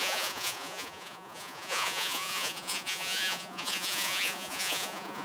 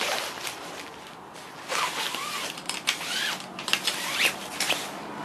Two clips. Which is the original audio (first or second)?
second